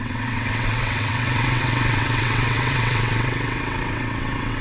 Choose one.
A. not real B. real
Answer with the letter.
A